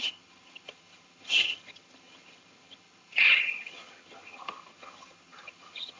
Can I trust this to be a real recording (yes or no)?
no